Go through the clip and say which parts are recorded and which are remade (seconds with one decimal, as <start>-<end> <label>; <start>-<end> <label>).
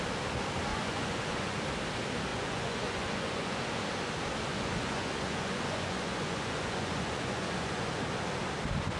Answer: 0.0-0.7 recorded; 0.7-1.6 remade; 1.6-2.3 recorded; 2.3-3.6 remade; 3.6-4.5 recorded; 4.5-7.9 remade; 7.9-9.0 recorded